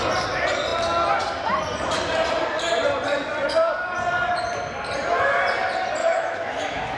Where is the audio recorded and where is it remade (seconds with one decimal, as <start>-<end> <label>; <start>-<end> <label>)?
0.0-6.0 recorded; 6.0-7.0 remade